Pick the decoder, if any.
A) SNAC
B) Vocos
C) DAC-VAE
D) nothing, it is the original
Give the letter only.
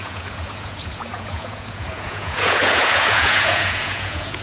B